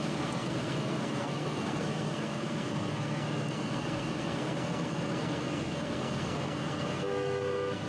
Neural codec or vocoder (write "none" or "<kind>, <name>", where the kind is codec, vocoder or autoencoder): codec, SNAC